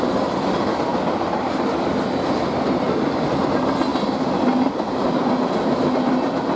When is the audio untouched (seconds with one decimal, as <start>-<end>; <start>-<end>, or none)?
0.0-6.6